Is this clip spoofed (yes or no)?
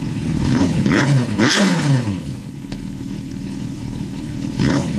yes